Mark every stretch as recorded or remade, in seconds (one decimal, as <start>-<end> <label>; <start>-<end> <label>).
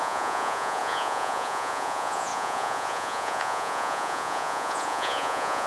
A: 0.0-5.7 remade